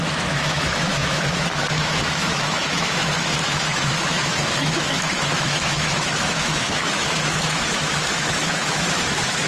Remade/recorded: remade